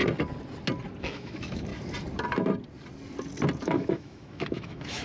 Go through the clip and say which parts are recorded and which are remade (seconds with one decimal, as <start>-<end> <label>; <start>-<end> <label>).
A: 0.0-1.0 recorded; 1.0-1.7 remade; 1.7-3.6 recorded; 3.6-5.0 remade

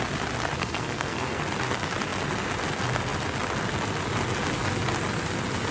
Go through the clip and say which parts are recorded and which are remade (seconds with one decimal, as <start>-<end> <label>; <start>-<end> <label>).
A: 0.0-0.6 recorded; 0.6-1.4 remade; 1.4-5.7 recorded

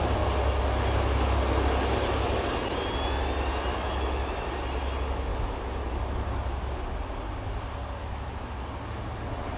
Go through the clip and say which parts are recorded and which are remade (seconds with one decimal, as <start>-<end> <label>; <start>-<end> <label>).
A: 0.0-3.7 recorded; 3.7-4.2 remade; 4.2-5.3 recorded; 5.3-5.9 remade; 5.9-8.0 recorded; 8.0-8.6 remade; 8.6-9.6 recorded

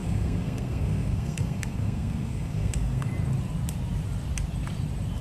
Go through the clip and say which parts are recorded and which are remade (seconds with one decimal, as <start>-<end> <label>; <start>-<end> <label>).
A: 0.0-3.1 remade; 3.1-5.2 recorded